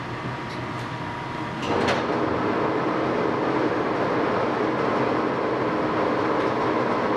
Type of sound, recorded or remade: recorded